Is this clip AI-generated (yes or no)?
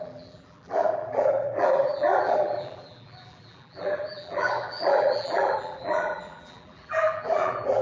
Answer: yes